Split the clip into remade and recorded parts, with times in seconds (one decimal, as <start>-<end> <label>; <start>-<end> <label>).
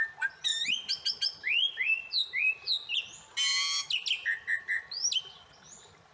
0.0-6.1 recorded